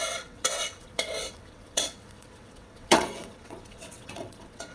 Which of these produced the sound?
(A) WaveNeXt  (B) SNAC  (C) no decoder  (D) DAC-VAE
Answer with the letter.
A